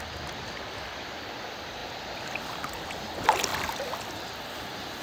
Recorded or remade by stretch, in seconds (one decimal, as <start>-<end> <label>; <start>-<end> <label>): 0.0-5.0 recorded